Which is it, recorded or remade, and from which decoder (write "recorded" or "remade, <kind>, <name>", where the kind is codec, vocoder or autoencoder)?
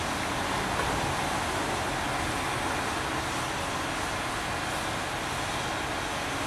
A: recorded